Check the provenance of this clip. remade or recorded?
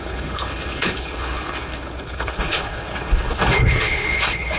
remade